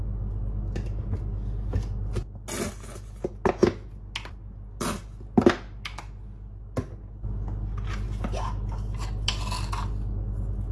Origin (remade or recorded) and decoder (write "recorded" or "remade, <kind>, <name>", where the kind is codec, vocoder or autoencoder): recorded